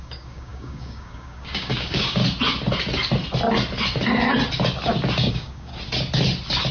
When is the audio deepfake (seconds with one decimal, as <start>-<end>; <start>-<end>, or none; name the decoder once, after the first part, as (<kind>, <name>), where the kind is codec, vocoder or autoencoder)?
0.0-2.2 (codec, DAC); 5.3-5.7